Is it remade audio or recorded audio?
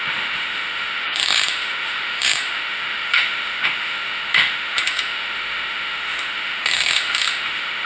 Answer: remade